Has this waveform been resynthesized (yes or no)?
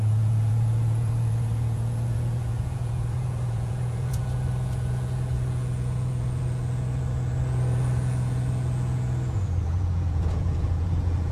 yes